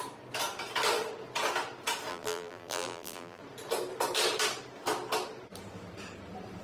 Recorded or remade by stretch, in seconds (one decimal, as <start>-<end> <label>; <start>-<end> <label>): 0.0-2.1 recorded; 2.1-3.4 remade; 3.4-6.6 recorded